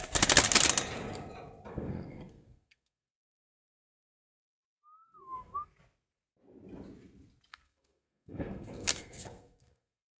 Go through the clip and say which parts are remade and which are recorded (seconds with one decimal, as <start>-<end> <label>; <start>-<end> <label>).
0.0-1.7 recorded; 1.7-4.4 remade; 4.4-5.0 recorded; 5.0-5.7 remade; 5.7-7.5 recorded; 7.5-10.2 remade

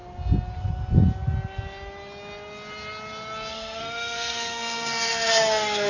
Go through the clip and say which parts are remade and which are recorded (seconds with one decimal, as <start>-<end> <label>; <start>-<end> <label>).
0.0-3.5 recorded; 3.5-5.9 remade

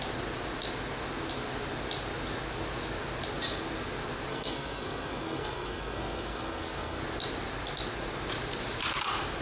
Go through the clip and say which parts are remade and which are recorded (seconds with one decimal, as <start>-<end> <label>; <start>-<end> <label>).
0.0-4.3 recorded; 4.3-7.0 remade; 7.0-9.4 recorded

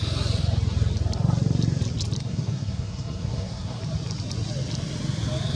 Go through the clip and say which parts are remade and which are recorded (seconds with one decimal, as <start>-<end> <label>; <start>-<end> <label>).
0.0-2.2 recorded; 2.2-3.8 remade; 3.8-5.5 recorded